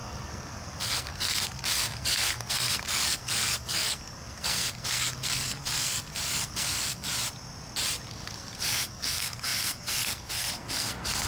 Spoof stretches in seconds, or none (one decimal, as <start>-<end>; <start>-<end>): 0.0-7.1; 8.1-11.3